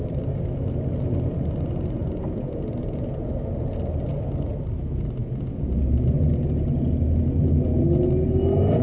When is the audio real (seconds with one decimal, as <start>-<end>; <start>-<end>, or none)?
0.0-2.0; 3.3-5.2; 5.8-8.8